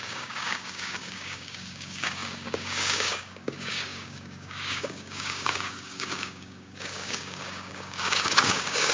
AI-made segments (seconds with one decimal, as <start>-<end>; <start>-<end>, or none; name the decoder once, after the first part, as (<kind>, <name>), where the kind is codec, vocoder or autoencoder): 0.0-8.9 (codec, DAC)

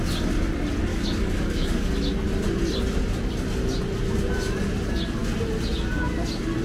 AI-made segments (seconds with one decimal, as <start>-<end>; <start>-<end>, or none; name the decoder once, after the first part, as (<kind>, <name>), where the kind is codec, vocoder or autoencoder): 0.9-1.9 (codec, DAC)

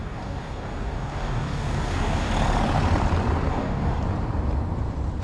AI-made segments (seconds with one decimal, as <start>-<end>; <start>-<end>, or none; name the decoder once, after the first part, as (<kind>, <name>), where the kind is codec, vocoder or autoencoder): 0.0-2.3 (codec, DAC); 3.5-4.0

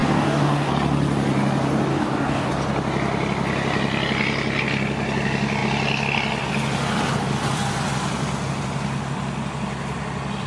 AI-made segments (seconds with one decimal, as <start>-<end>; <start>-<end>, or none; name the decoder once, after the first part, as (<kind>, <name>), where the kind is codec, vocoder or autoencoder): 0.0-0.7 (codec, DAC); 1.9-2.5

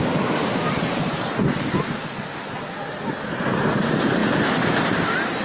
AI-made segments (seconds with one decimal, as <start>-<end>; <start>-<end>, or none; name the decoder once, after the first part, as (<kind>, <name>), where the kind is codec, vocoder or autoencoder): 2.0-2.6 (codec, DAC)

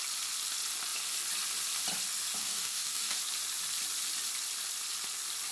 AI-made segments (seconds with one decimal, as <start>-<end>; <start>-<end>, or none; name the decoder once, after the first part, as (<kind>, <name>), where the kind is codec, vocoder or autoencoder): 2.4-3.2 (codec, DAC)